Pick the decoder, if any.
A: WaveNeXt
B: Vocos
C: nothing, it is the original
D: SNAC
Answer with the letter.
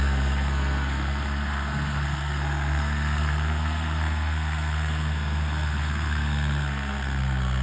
D